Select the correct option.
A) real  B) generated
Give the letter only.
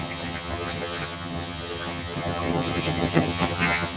B